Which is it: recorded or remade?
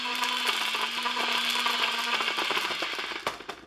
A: recorded